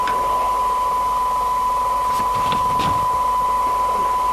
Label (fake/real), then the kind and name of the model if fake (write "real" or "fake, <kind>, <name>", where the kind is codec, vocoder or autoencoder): real